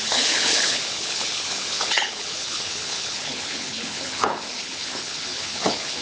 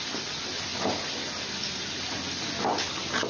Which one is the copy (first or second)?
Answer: first